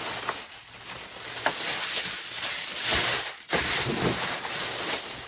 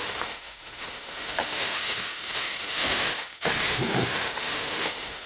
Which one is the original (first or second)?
first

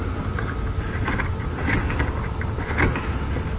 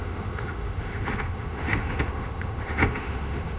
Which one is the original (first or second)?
first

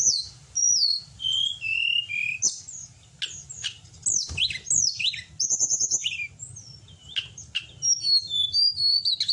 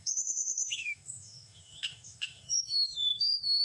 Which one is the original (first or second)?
first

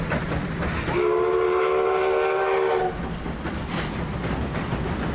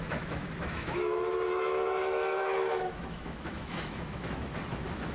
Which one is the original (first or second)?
first